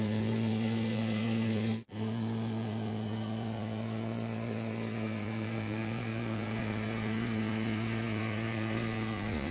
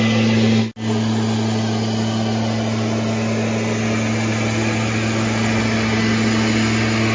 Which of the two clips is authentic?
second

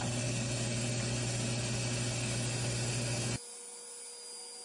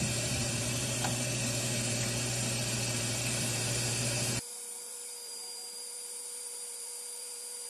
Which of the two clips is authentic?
first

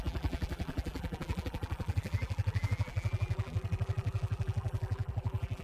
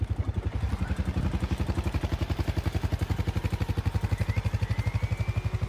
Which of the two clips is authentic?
second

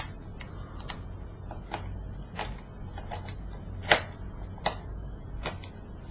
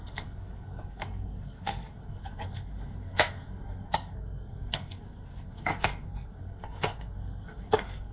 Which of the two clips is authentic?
first